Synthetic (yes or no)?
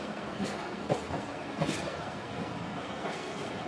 yes